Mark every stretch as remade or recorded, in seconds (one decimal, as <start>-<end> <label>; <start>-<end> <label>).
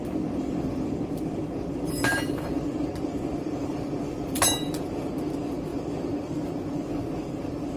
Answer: 0.0-1.4 recorded; 1.4-2.1 remade; 2.1-3.1 recorded; 3.1-5.1 remade; 5.1-7.8 recorded